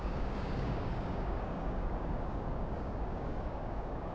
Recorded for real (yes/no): no